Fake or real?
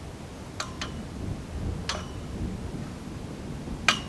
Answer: real